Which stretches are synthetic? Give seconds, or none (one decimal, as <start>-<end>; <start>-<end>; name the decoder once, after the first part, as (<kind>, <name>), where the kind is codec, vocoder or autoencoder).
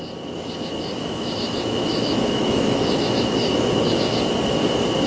1.0-4.1 (autoencoder, DAC-VAE)